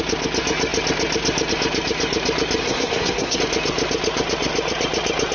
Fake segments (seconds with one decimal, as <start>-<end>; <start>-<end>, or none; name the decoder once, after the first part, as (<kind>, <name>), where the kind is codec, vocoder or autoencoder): 2.6-3.4 (codec, SNAC)